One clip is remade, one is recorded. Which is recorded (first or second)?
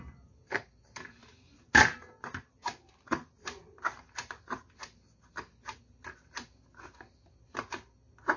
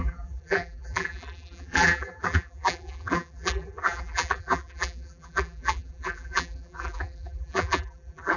first